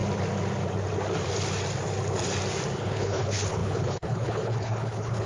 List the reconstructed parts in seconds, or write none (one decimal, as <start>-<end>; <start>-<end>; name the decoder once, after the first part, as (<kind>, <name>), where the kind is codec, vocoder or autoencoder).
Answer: 2.8-5.3 (codec, HILCodec)